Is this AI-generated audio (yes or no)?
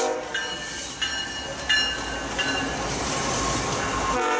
no